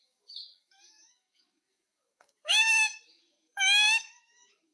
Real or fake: fake